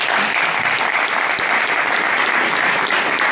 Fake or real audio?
real